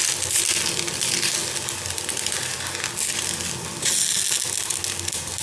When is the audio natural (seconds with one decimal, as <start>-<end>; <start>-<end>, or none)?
0.0-5.4